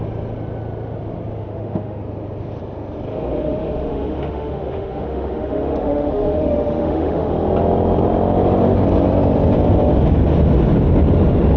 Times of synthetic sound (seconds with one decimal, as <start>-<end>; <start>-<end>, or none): 1.4-2.0; 3.1-7.3